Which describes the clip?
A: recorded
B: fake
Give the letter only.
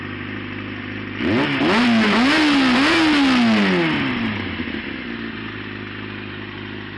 A